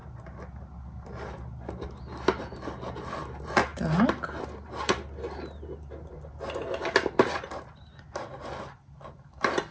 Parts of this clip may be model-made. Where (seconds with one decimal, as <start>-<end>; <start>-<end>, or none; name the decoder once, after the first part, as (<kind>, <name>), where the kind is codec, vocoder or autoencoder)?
none